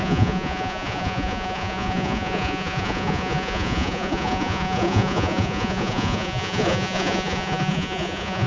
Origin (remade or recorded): remade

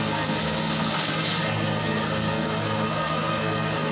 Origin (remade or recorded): remade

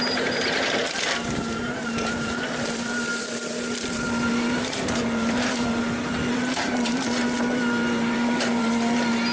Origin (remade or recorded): remade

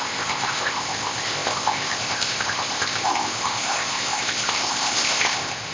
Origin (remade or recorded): remade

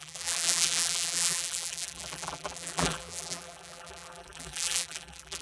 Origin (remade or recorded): remade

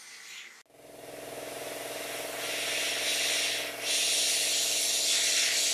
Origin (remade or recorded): recorded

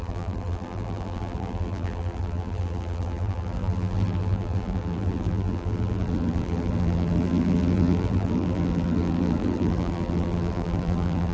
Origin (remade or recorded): remade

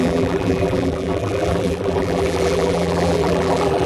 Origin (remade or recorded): remade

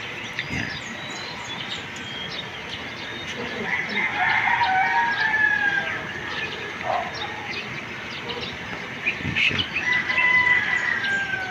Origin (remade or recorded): recorded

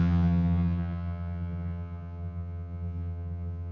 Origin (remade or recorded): remade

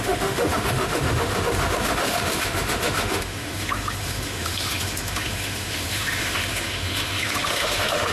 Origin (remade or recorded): remade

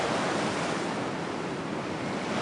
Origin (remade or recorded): recorded